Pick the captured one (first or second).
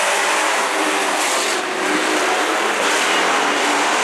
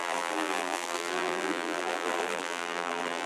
first